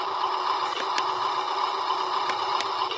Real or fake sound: real